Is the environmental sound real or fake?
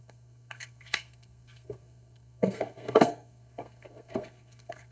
fake